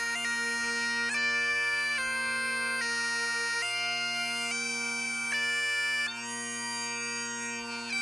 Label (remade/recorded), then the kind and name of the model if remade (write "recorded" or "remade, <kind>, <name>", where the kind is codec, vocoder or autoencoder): recorded